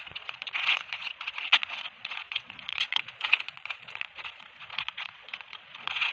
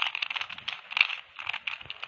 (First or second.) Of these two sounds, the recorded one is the second